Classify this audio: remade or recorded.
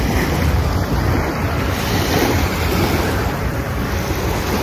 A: recorded